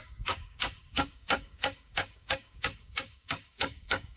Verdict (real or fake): fake